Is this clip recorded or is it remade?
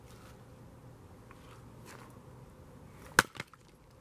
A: recorded